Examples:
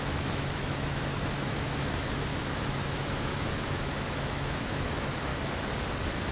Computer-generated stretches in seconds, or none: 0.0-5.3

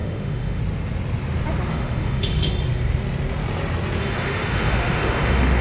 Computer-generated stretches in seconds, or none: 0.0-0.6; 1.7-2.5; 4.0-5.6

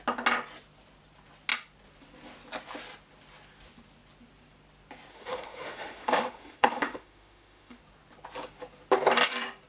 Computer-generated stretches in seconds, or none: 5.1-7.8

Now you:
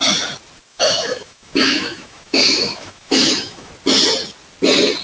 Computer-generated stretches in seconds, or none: 0.7-3.7

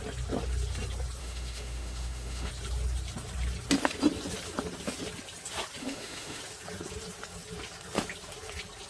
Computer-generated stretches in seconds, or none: 1.2-2.5; 5.8-6.4

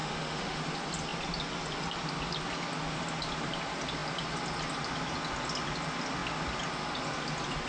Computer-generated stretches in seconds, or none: 0.0-0.6

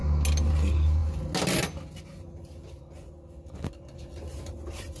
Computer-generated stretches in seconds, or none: none

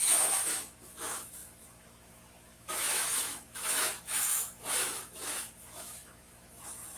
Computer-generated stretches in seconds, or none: 0.0-7.0